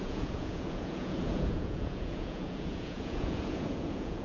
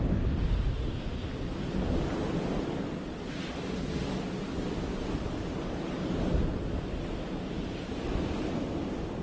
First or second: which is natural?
second